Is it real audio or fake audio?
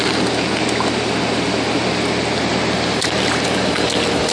real